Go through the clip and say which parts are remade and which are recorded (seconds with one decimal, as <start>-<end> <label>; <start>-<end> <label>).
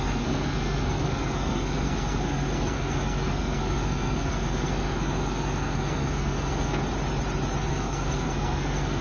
0.0-6.8 remade; 6.8-7.7 recorded; 7.7-9.0 remade